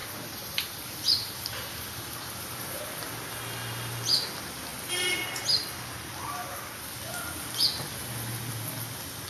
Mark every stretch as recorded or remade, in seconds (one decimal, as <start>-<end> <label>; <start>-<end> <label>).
0.0-2.8 remade; 2.8-9.3 recorded